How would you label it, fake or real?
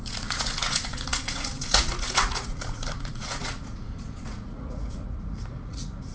fake